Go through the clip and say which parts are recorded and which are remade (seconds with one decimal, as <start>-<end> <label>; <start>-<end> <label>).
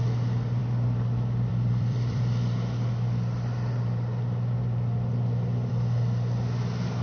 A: 0.0-1.5 recorded; 1.5-5.7 remade; 5.7-7.0 recorded